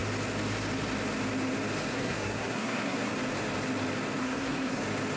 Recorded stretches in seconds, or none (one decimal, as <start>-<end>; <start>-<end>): 0.0-1.9; 3.1-4.2; 4.8-5.2